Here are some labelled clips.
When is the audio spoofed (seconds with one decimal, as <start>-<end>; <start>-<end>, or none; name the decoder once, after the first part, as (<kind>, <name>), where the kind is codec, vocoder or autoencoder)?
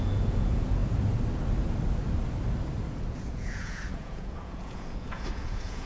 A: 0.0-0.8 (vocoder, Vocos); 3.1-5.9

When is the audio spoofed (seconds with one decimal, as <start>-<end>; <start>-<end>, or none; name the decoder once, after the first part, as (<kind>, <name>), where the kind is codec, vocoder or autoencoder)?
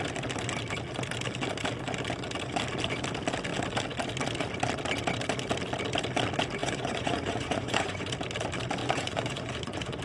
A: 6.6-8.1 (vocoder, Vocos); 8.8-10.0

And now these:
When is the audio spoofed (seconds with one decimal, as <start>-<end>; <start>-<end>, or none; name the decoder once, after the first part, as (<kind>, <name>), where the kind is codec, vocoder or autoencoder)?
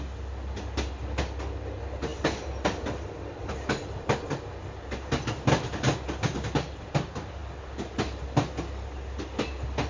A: none